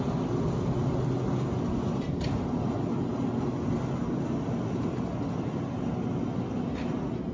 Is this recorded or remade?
recorded